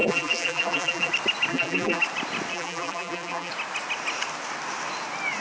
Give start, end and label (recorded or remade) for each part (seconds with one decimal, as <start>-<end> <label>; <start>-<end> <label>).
0.0-1.1 remade; 1.1-1.5 recorded; 1.5-2.0 remade; 2.0-2.5 recorded; 2.5-3.5 remade; 3.5-5.4 recorded